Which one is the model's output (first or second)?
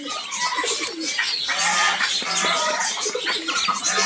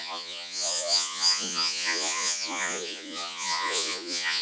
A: second